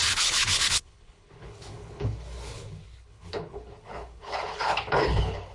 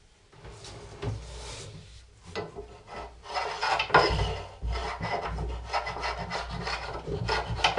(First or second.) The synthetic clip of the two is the first